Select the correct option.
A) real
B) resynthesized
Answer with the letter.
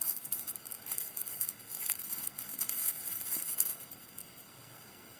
B